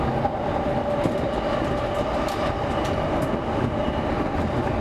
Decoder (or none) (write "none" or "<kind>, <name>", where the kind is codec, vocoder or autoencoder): none